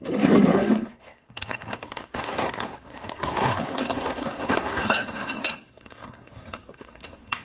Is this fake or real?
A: fake